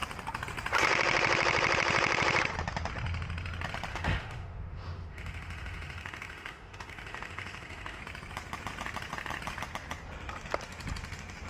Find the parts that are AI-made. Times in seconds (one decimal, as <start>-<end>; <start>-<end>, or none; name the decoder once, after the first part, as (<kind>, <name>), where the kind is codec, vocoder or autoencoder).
3.9-8.0 (autoencoder, DAC-VAE)